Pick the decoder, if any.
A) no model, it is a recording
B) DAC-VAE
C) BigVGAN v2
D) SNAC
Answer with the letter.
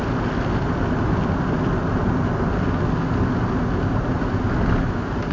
A